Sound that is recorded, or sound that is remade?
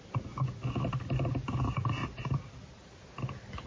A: recorded